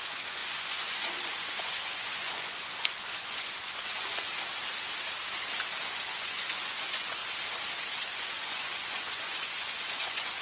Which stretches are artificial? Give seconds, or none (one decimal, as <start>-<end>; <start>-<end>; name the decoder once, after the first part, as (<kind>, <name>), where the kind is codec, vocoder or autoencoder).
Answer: 0.0-4.3 (vocoder, Vocos); 5.8-7.2; 8.0-10.4